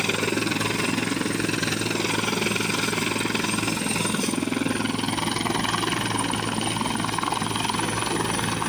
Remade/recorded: recorded